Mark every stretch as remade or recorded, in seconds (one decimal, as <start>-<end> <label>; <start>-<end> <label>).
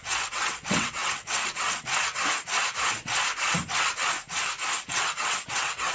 0.0-2.2 remade; 2.2-4.8 recorded; 4.8-5.9 remade